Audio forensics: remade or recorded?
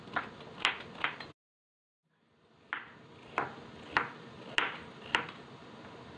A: recorded